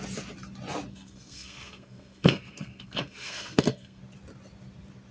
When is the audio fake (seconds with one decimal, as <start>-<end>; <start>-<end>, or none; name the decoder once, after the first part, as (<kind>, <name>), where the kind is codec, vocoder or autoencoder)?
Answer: 0.9-4.0 (codec, SNAC)